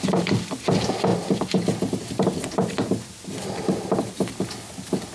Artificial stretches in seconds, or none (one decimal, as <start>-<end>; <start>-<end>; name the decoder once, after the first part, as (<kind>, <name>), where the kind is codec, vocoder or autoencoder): none